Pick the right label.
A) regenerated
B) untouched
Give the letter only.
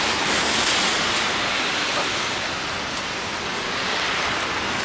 B